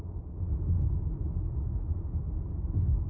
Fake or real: real